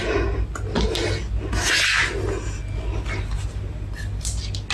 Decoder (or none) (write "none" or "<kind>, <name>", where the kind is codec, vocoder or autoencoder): none